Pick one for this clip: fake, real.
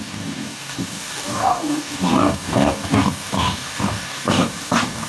fake